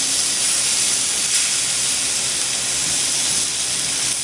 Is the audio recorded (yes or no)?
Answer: yes